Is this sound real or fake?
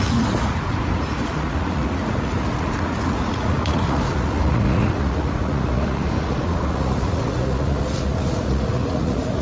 fake